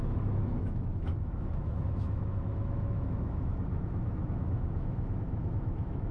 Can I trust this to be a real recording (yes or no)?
no